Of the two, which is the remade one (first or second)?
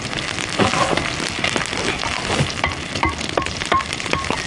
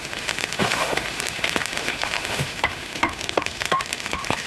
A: second